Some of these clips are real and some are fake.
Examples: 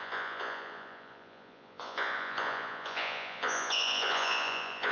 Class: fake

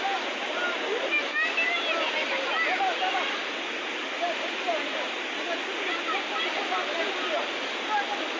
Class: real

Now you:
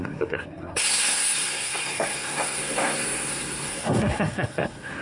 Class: fake